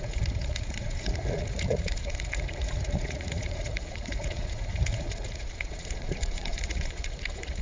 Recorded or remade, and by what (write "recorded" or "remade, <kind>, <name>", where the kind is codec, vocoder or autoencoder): remade, vocoder, Vocos